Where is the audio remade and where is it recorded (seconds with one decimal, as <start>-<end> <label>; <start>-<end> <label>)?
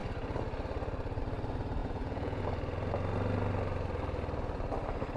0.0-1.8 recorded; 1.8-2.4 remade; 2.4-5.2 recorded